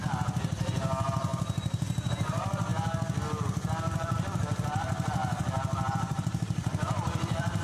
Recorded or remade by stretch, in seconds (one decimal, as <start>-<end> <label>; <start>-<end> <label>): 0.0-1.3 remade; 1.3-2.1 recorded; 2.1-2.7 remade; 2.7-3.8 recorded; 3.8-5.2 remade; 5.2-5.9 recorded; 5.9-7.6 remade